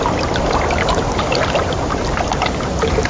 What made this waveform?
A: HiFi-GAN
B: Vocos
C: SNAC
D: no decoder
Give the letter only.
D